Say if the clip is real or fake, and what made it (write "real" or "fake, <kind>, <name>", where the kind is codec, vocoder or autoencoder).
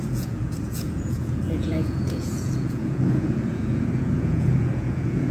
fake, vocoder, Vocos